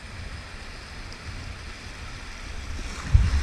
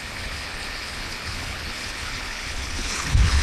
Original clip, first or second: first